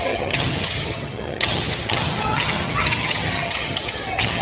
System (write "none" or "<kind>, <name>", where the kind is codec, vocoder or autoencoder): vocoder, HiFi-GAN